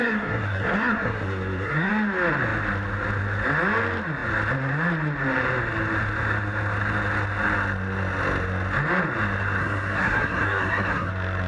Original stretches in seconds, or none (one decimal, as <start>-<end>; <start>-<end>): 1.9-9.6; 11.1-11.5